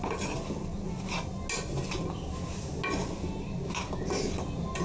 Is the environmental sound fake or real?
real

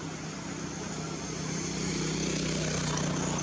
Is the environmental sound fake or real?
real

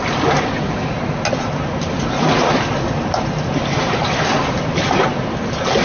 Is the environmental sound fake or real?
real